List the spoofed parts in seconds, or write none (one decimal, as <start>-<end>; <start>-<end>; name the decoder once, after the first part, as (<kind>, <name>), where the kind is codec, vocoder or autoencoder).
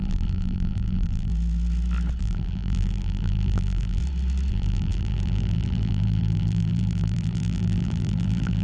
0.0-1.3 (vocoder, BigVGAN v2); 2.2-4.0; 4.5-8.6